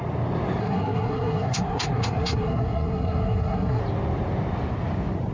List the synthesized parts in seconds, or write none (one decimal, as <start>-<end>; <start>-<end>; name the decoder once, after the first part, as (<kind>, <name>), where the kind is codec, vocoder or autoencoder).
0.6-3.8 (codec, SNAC)